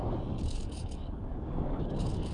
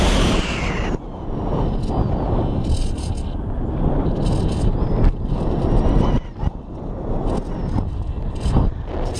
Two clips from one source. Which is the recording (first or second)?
second